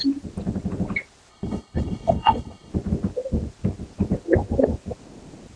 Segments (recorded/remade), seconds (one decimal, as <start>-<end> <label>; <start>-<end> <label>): 0.0-1.3 recorded; 1.3-2.7 remade; 2.7-5.6 recorded